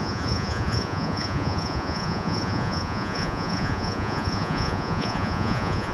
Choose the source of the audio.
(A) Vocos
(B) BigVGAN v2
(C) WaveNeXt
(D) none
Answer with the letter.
A